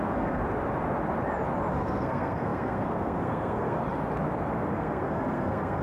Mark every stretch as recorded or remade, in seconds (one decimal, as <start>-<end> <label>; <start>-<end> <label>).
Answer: 0.0-0.4 remade; 0.4-1.7 recorded; 1.7-3.8 remade; 3.8-4.5 recorded; 4.5-5.8 remade